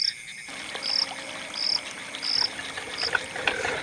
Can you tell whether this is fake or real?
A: real